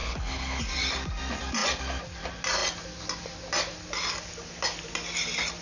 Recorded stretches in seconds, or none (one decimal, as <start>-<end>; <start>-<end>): 0.6-5.6